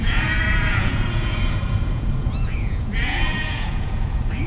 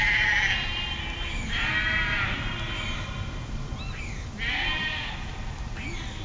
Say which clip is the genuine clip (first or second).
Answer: second